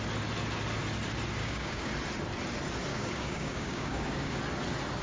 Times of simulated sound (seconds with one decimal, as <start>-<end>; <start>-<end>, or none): 1.4-1.9; 2.9-4.4